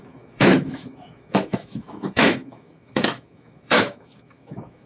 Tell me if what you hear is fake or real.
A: fake